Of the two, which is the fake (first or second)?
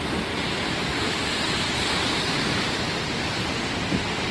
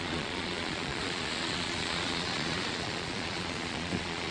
second